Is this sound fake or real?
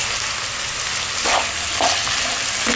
real